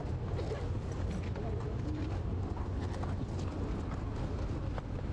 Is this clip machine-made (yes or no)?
no